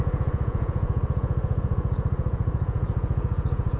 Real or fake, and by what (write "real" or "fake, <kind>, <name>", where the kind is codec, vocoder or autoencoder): fake, vocoder, Vocos